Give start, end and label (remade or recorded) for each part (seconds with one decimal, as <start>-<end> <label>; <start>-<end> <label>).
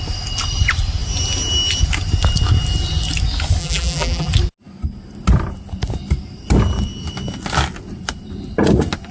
0.0-3.6 recorded; 3.6-4.3 remade; 4.3-9.1 recorded